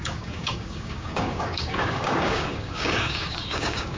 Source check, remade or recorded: remade